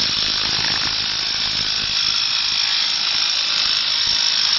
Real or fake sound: real